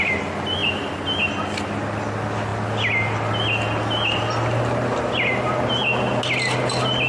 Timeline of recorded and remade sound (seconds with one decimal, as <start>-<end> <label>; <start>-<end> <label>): 0.0-7.1 recorded

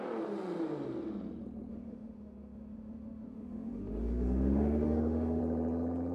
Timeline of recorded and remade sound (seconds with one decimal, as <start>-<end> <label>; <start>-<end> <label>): 0.0-1.7 recorded; 1.7-5.4 remade; 5.4-6.1 recorded

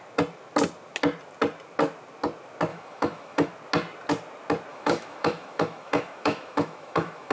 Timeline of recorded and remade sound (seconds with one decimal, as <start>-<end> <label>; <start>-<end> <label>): 0.0-2.7 recorded; 2.7-3.5 remade; 3.5-4.7 recorded; 4.7-7.3 remade